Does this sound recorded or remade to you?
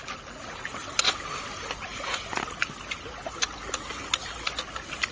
recorded